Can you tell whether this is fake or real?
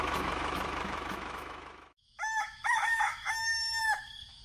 fake